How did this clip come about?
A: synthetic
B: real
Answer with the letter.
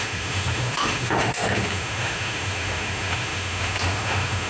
A